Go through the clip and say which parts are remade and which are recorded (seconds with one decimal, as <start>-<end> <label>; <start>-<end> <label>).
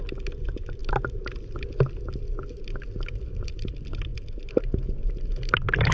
0.0-5.9 recorded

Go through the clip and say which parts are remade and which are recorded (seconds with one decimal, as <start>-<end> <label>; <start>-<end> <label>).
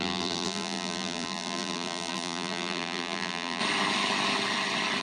0.0-3.6 remade; 3.6-5.0 recorded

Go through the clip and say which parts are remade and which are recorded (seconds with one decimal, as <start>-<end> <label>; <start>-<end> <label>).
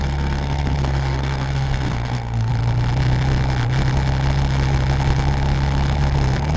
0.0-2.5 remade; 2.5-6.6 recorded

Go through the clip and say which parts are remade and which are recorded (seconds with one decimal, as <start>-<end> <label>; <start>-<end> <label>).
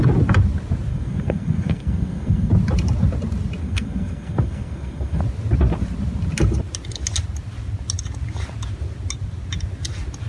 0.0-0.9 recorded; 0.9-2.5 remade; 2.5-3.6 recorded; 3.6-5.2 remade; 5.2-10.3 recorded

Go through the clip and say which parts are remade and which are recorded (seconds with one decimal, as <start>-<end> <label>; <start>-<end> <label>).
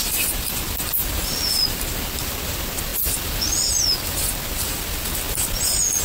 0.0-6.0 recorded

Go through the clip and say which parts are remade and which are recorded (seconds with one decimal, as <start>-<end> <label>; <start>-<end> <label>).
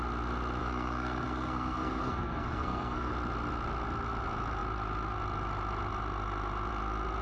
0.0-0.6 recorded; 0.6-3.1 remade; 3.1-7.2 recorded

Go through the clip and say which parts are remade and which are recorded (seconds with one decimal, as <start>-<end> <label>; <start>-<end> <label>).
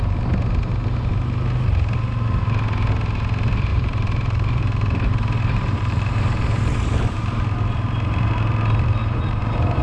0.0-3.7 recorded; 3.7-8.3 remade; 8.3-9.0 recorded; 9.0-9.8 remade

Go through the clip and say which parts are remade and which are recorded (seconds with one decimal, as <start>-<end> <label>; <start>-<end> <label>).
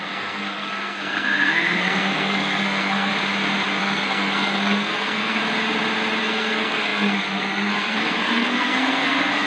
0.0-3.1 remade; 3.1-3.8 recorded; 3.8-5.4 remade; 5.4-6.2 recorded; 6.2-9.5 remade